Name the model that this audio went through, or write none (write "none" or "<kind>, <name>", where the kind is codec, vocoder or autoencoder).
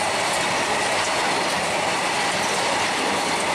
none